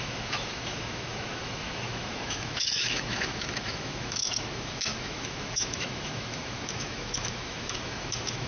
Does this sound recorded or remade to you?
remade